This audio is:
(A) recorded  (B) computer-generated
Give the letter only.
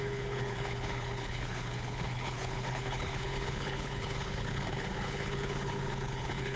B